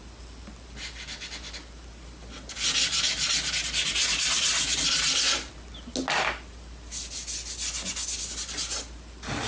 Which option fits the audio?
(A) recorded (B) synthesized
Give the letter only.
A